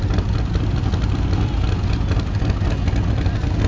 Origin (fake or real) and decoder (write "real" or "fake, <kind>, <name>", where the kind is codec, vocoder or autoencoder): real